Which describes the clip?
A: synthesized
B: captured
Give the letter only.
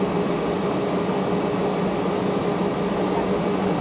B